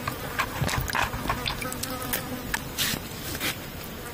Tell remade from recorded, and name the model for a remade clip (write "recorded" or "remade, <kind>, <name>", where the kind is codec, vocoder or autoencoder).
recorded